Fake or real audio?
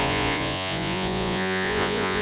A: fake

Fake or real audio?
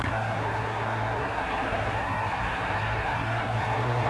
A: fake